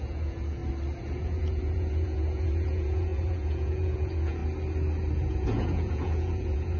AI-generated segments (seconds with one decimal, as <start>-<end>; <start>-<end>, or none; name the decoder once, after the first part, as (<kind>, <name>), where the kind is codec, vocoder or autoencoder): 0.0-0.6 (vocoder, Vocos); 1.2-4.4; 5.1-6.8